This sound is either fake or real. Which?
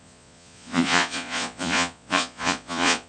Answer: fake